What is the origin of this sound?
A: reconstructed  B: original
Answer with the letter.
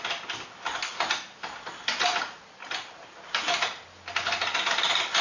B